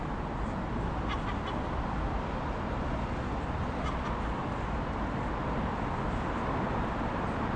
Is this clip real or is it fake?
real